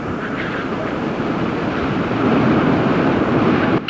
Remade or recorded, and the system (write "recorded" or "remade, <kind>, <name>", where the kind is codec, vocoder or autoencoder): remade, vocoder, BigVGAN v2